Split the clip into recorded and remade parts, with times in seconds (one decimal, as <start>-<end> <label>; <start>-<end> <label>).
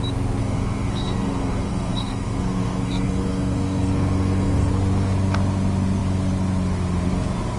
0.0-0.4 recorded; 0.4-4.7 remade; 4.7-7.6 recorded